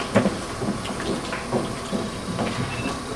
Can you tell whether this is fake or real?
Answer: real